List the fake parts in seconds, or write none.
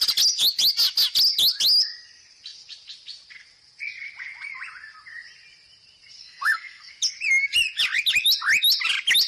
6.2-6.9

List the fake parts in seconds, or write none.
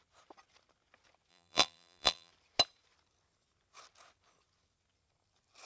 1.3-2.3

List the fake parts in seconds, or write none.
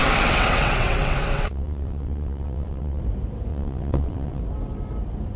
0.0-3.0; 3.5-4.4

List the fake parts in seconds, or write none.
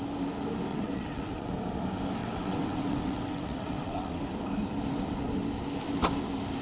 0.7-1.5; 2.2-4.2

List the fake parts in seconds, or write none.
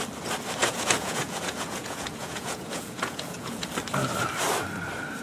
0.6-3.7